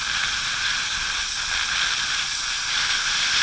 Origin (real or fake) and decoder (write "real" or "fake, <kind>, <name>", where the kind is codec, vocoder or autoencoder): real